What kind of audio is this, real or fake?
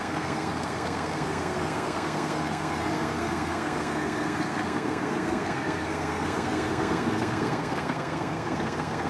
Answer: fake